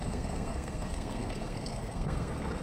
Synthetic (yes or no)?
yes